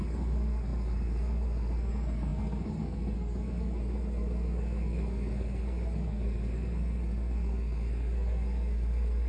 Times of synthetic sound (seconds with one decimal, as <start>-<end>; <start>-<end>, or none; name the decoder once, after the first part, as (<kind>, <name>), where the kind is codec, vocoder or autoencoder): 0.0-9.3 (codec, SNAC)